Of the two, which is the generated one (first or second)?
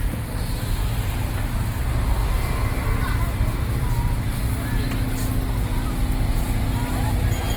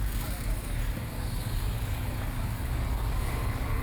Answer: second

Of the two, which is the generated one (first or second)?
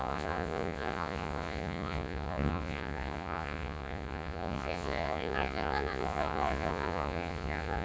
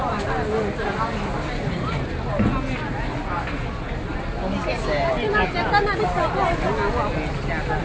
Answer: first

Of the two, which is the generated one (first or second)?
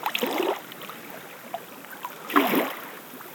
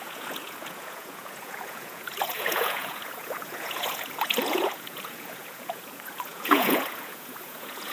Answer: second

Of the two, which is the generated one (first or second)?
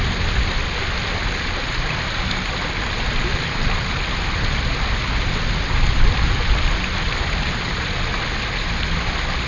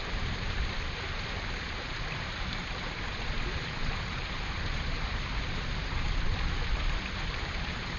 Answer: second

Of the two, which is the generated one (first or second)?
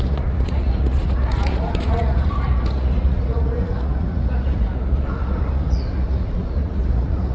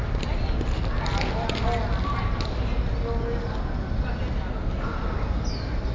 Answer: first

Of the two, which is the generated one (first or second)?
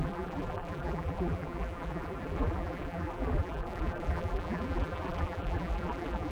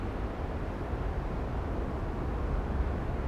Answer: first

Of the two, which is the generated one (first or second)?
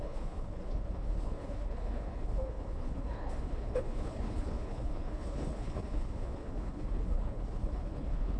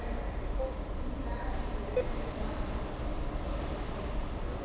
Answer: first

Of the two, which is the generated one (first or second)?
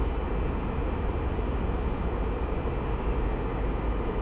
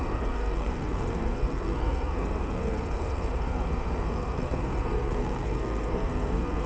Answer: second